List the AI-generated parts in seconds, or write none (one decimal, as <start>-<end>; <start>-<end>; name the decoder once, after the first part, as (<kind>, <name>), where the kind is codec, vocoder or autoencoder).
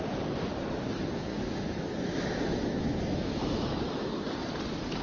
1.3-4.1 (autoencoder, DAC-VAE)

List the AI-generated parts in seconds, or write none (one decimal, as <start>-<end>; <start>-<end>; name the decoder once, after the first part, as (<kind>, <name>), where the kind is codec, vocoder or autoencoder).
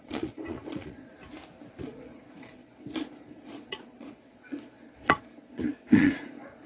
0.0-1.1 (vocoder, Vocos); 1.8-6.7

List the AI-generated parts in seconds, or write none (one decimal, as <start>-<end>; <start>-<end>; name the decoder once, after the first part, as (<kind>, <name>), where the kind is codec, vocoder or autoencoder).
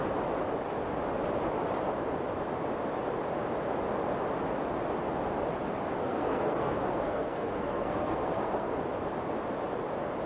6.0-8.7 (codec, SNAC)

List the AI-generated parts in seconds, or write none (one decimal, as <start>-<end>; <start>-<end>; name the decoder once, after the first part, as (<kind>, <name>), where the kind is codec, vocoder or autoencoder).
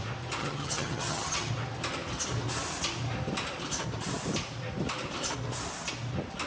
0.4-1.5 (vocoder, HiFi-GAN)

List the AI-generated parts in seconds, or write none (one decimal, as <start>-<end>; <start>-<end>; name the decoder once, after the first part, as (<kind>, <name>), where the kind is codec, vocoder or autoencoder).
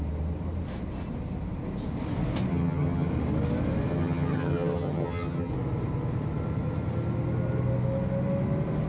2.5-3.1 (vocoder, HiFi-GAN); 3.9-5.5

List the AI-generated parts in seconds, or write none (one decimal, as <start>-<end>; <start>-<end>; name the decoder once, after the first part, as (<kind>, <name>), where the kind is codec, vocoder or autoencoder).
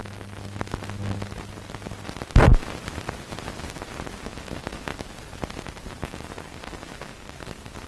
4.2-4.9 (codec, DAC); 5.8-7.9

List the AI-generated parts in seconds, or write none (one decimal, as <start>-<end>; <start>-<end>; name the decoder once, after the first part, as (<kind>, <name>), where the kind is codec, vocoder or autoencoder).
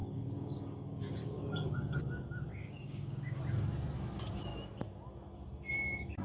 0.0-2.0 (codec, DAC); 2.5-3.4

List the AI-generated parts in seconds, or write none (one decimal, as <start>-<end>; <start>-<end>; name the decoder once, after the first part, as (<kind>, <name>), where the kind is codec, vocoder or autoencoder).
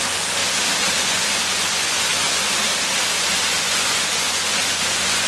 0.0-0.4 (vocoder, Vocos); 1.0-2.7; 3.2-5.3